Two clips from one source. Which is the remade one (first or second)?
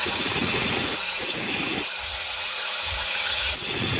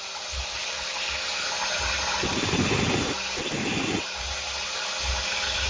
first